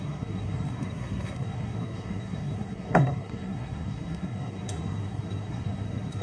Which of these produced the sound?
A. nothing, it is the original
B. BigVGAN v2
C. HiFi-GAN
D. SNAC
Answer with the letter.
D